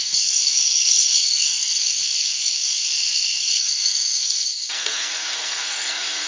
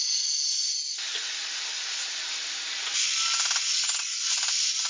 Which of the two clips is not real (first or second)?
first